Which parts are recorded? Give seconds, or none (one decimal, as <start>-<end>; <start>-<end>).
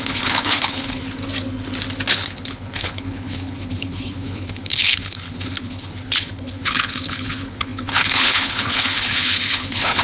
1.0-2.1